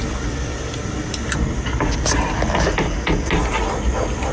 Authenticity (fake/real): real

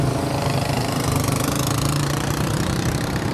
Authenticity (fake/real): fake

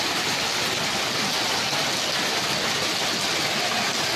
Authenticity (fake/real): real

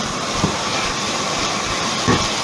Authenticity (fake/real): fake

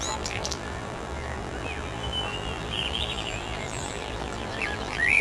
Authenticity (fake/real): fake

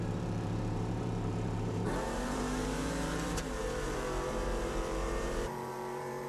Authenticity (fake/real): fake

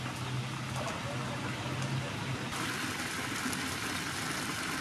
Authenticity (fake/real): real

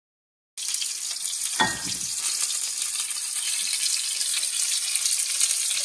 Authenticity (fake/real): real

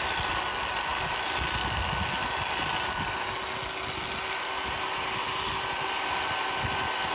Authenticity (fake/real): real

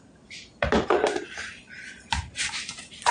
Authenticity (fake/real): fake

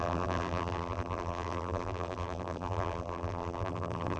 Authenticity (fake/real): fake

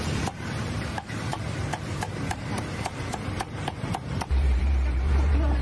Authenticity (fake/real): fake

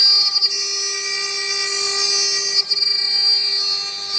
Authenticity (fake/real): real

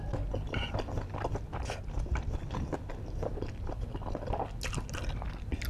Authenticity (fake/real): real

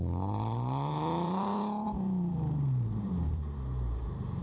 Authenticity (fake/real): fake